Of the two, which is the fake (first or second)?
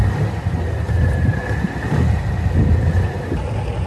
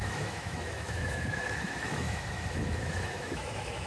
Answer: second